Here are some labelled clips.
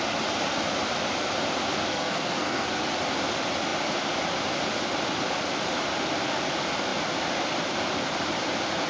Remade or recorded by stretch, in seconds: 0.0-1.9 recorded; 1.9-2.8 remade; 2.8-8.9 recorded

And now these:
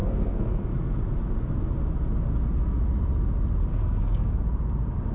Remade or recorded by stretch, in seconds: 0.0-0.6 remade; 0.6-3.7 recorded; 3.7-4.4 remade; 4.4-5.1 recorded

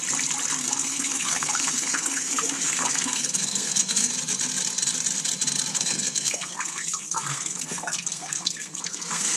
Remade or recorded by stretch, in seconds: 0.0-0.6 recorded; 0.6-4.1 remade; 4.1-5.7 recorded; 5.7-9.4 remade

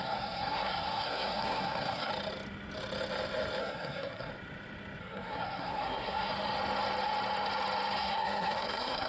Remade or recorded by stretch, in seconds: 0.0-2.1 remade; 2.1-3.6 recorded; 3.6-4.3 remade; 4.3-5.0 recorded; 5.0-6.3 remade; 6.3-8.0 recorded; 8.0-9.1 remade

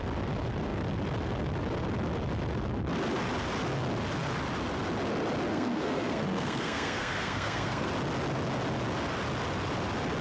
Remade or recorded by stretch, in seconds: 0.0-5.5 recorded; 5.5-7.9 remade; 7.9-10.2 recorded

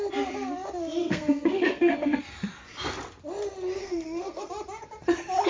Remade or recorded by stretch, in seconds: 0.0-1.0 recorded; 1.0-2.2 remade; 2.2-3.8 recorded; 3.8-4.5 remade; 4.5-5.5 recorded